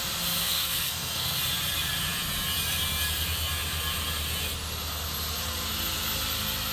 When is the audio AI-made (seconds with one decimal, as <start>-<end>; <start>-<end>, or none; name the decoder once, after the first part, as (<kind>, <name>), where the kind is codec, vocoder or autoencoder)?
0.4-1.4 (codec, SNAC)